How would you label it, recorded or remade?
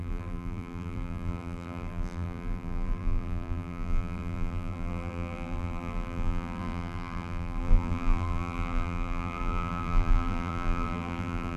remade